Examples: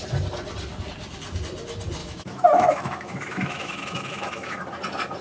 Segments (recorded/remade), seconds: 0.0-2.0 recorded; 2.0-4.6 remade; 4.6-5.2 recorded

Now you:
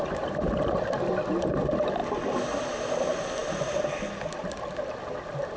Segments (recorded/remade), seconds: 0.0-5.6 recorded